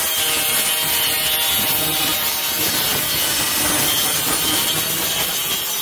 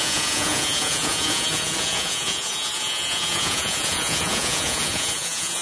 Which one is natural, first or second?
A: first